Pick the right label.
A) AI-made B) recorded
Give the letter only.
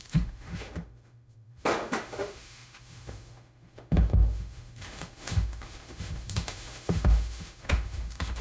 A